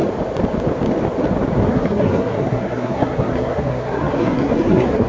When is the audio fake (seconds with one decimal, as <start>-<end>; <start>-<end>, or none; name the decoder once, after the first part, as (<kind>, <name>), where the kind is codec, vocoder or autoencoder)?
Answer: 1.7-5.1 (codec, SNAC)